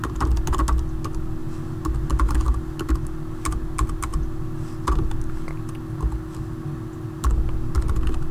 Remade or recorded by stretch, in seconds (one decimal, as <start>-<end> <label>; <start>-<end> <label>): 0.0-8.3 recorded